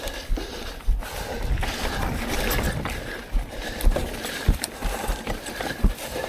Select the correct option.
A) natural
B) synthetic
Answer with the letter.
B